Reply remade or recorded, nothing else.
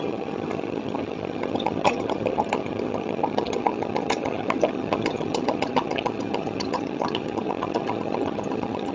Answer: remade